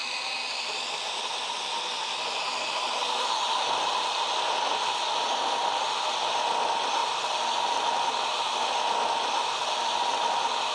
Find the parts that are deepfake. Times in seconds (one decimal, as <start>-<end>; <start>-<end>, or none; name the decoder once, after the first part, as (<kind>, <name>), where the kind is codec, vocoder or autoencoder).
none